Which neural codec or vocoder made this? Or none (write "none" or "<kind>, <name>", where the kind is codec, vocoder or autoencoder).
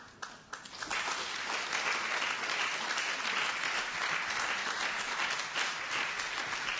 none